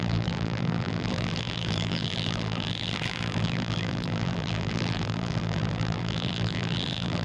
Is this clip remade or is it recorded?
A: remade